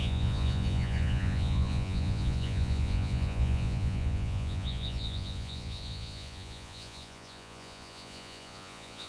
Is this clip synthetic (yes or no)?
yes